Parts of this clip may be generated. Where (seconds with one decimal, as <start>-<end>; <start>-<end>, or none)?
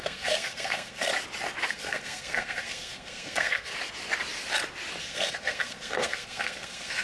0.0-1.1; 1.7-3.7; 5.0-7.0